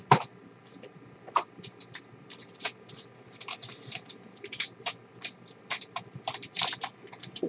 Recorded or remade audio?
remade